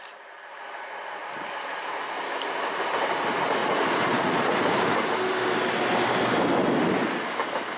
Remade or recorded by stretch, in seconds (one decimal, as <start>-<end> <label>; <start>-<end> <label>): 0.0-3.6 recorded; 3.6-4.4 remade; 4.4-7.8 recorded